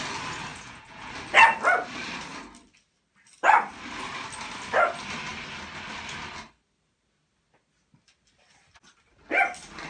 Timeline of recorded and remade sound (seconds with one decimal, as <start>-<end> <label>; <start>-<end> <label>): 0.0-0.5 recorded; 0.5-1.1 remade; 1.1-9.9 recorded